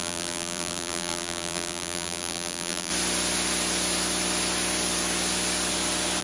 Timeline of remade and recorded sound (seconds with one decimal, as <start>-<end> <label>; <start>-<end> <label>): 0.0-2.9 remade; 2.9-6.2 recorded